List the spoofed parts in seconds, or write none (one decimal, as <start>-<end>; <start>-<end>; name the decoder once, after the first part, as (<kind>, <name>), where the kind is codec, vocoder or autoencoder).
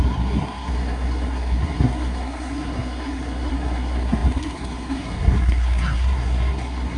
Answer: 0.0-7.0 (codec, SNAC)